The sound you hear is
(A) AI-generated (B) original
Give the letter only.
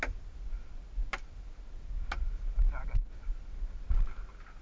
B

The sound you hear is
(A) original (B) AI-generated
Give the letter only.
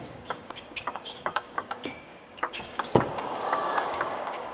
B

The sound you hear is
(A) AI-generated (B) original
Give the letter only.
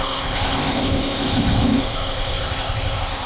A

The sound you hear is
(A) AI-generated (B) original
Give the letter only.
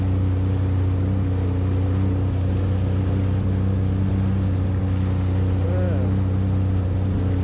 B